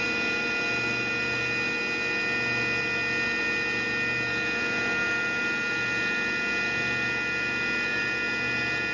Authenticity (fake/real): real